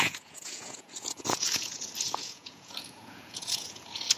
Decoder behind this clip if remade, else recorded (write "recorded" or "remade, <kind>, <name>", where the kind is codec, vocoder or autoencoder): remade, vocoder, Vocos